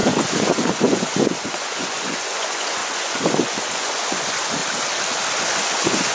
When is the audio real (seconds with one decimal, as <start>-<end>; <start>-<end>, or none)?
4.6-5.5